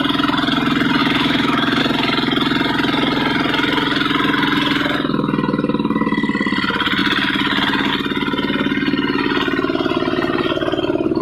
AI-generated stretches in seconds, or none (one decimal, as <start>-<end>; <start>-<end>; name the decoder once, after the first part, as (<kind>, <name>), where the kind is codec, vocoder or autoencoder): 1.0-1.8 (autoencoder, DAC-VAE)